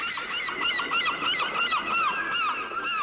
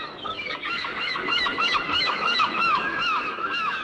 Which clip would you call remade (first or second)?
second